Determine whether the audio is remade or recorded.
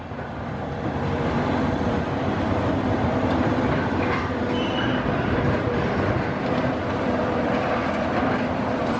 remade